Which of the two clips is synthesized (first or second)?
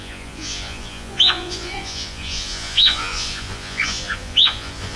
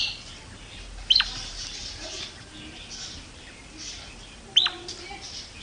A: first